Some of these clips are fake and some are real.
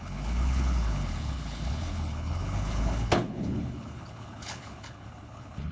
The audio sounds fake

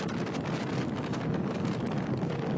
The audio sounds real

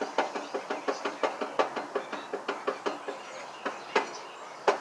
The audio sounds real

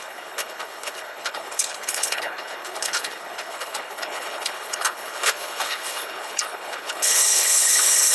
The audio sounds fake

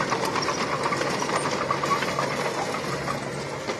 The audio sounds real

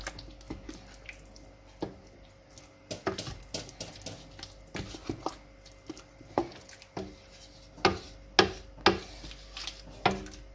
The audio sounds real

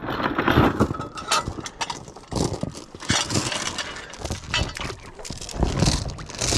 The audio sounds real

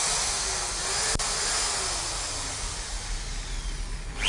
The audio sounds real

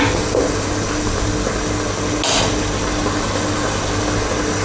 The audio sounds real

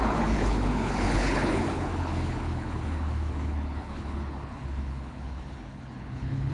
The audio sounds fake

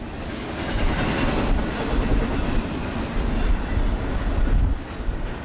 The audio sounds real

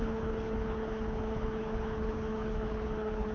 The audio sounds fake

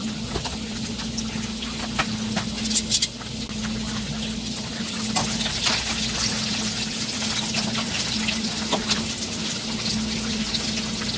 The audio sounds real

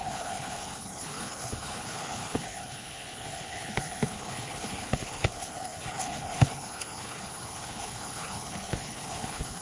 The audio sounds fake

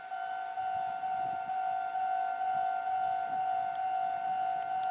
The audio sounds real